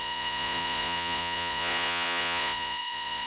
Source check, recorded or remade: remade